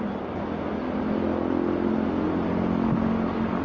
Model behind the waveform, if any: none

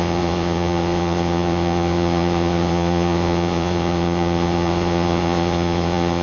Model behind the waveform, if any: vocoder, Vocos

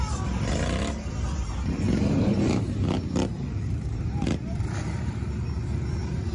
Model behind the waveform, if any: none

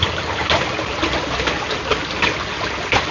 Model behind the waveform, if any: none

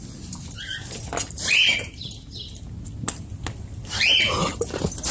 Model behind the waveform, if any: none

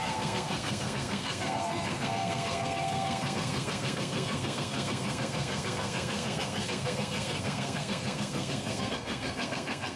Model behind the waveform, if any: codec, SNAC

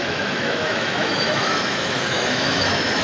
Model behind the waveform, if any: autoencoder, DAC-VAE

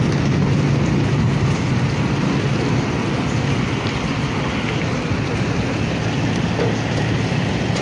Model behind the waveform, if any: none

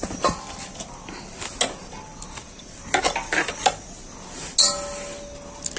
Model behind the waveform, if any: none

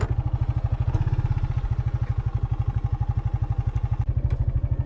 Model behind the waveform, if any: none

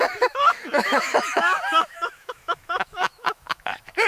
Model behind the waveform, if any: autoencoder, DAC-VAE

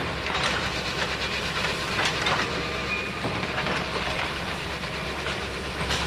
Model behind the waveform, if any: vocoder, BigVGAN v2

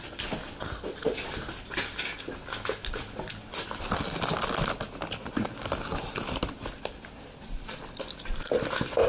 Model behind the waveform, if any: none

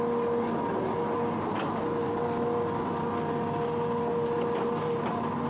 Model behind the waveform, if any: none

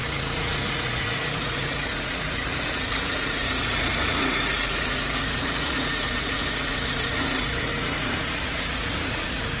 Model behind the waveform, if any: vocoder, Vocos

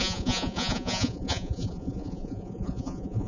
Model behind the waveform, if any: vocoder, Vocos